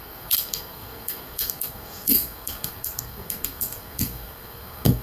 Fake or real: fake